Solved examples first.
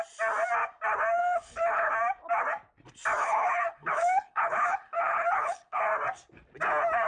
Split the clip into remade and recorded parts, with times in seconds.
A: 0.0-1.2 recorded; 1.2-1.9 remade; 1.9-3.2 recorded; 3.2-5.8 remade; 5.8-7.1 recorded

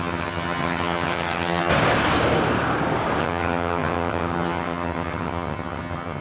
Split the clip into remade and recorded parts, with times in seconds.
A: 0.0-1.7 remade; 1.7-3.2 recorded; 3.2-6.2 remade

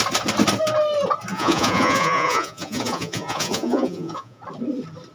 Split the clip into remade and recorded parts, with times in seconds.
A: 0.0-1.3 recorded; 1.3-4.4 remade; 4.4-5.1 recorded

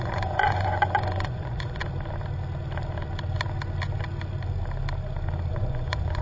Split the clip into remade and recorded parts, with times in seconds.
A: 0.0-1.8 remade; 1.8-5.5 recorded; 5.5-6.2 remade

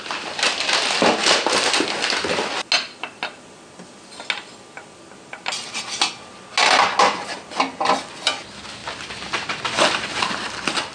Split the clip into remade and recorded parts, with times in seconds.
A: 0.0-10.9 recorded

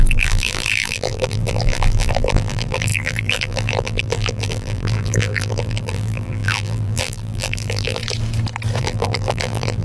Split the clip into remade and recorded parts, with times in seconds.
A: 0.0-8.0 remade; 8.0-8.8 recorded; 8.8-9.8 remade

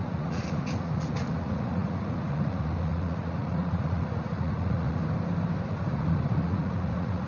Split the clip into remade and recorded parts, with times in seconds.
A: 0.0-5.0 remade; 5.0-5.7 recorded; 5.7-7.3 remade